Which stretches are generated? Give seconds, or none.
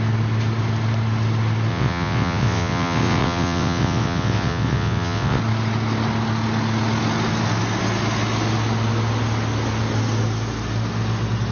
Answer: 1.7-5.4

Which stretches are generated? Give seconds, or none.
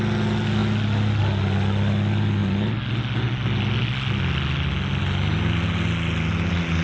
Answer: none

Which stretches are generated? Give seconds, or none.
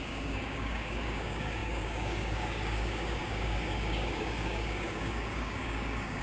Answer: 0.0-6.2